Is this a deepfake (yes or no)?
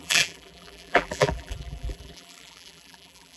yes